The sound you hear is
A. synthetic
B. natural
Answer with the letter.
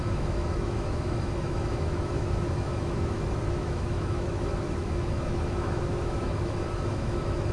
A